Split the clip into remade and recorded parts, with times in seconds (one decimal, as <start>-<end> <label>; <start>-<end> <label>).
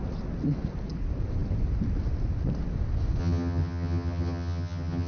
0.0-3.2 recorded; 3.2-5.1 remade